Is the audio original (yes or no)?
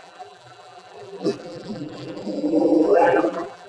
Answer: no